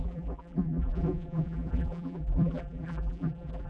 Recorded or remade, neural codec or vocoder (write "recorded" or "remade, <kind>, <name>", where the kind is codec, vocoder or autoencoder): remade, vocoder, BigVGAN v2